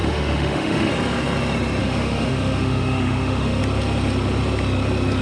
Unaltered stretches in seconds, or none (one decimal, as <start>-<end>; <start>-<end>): 0.9-1.8; 3.6-5.2